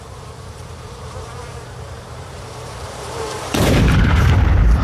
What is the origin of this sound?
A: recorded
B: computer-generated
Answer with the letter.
B